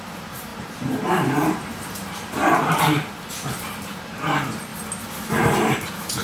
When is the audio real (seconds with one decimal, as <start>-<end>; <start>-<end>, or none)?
4.7-5.3